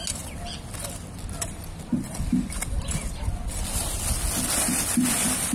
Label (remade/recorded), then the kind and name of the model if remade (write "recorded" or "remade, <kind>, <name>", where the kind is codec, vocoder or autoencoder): recorded